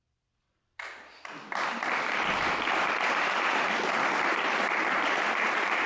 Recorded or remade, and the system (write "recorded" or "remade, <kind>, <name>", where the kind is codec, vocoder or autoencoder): remade, vocoder, BigVGAN v2